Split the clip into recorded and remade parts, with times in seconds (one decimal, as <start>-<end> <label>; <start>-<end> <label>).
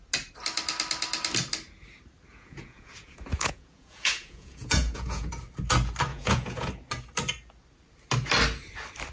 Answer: 0.0-2.3 recorded; 2.3-5.3 remade; 5.3-6.1 recorded; 6.1-6.7 remade; 6.7-9.1 recorded